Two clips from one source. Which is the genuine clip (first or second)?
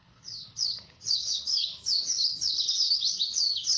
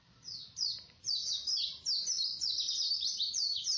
second